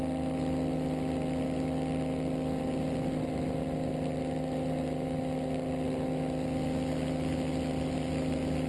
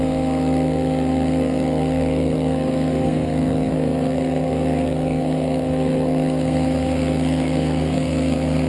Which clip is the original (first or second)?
first